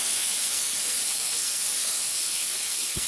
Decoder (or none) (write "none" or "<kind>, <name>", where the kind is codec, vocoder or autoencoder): codec, SNAC